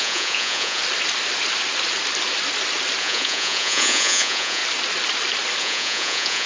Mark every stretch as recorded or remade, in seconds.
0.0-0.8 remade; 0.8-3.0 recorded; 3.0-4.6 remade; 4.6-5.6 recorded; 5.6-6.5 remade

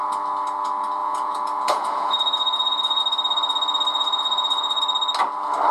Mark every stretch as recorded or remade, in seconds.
0.0-1.0 recorded; 1.0-3.0 remade; 3.0-3.9 recorded; 3.9-4.8 remade; 4.8-5.7 recorded

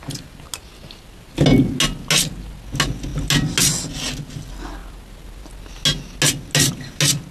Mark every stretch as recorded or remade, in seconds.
0.0-7.3 recorded

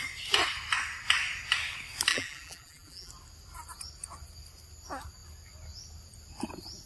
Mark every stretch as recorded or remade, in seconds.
0.0-2.1 recorded; 2.1-3.1 remade; 3.1-6.9 recorded

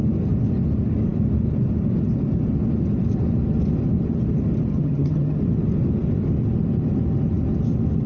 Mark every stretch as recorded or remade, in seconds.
0.0-4.7 recorded; 4.7-5.4 remade; 5.4-8.1 recorded